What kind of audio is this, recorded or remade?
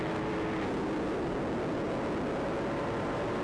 recorded